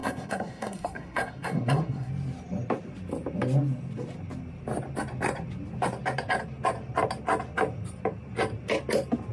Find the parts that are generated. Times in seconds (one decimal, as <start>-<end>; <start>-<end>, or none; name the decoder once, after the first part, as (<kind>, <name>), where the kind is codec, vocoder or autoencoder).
0.0-2.1 (codec, SNAC)